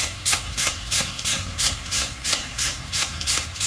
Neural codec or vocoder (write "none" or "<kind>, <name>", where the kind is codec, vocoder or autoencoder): codec, SNAC